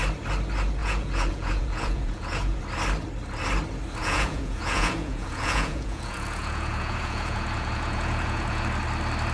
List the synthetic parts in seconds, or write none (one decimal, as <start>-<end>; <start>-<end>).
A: 0.8-2.6; 4.0-8.6